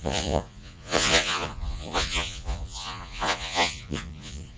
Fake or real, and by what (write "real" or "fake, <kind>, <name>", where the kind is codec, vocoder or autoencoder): fake, vocoder, Vocos